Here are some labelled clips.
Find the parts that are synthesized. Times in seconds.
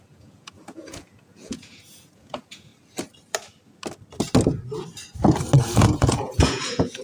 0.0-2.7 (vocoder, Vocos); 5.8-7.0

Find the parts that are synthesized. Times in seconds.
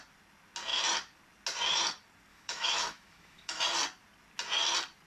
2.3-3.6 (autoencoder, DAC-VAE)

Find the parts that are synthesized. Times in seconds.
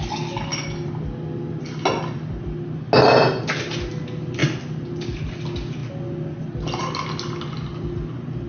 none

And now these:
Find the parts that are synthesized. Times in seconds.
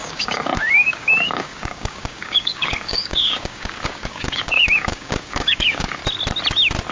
0.0-6.0 (codec, DAC)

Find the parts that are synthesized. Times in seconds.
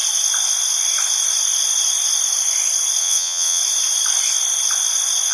3.0-3.6 (vocoder, WaveNeXt)